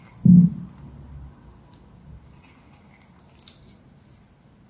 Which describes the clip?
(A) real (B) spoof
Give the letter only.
A